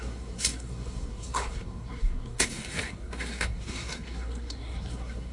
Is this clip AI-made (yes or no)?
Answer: yes